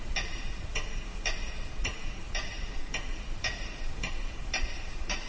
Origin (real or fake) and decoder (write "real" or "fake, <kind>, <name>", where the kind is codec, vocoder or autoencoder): fake, vocoder, BigVGAN v2